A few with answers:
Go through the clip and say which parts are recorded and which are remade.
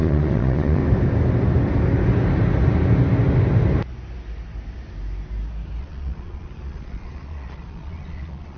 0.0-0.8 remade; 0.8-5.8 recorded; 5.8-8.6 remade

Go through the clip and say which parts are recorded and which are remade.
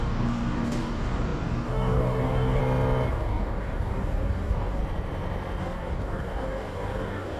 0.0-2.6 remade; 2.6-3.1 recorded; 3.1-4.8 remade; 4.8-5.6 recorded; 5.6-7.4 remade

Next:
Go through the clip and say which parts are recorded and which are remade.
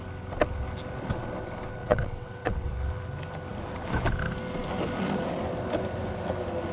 0.0-1.8 recorded; 1.8-2.7 remade; 2.7-6.7 recorded